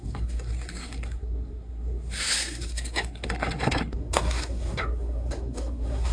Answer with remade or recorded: remade